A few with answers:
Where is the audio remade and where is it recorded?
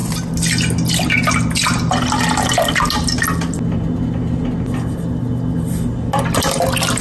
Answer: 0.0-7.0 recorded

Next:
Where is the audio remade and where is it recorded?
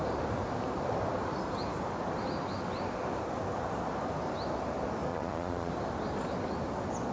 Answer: 0.0-5.1 recorded; 5.1-5.7 remade; 5.7-7.1 recorded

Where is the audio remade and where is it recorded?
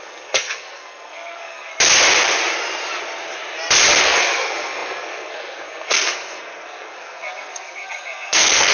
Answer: 0.0-1.7 remade; 1.7-4.0 recorded; 4.0-8.7 remade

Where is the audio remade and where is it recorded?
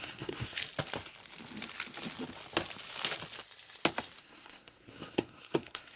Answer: 0.0-0.6 remade; 0.6-4.2 recorded; 4.2-6.0 remade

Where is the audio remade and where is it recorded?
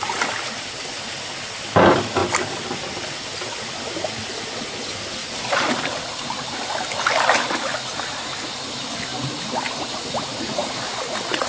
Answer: 0.0-5.2 recorded; 5.2-6.0 remade; 6.0-11.5 recorded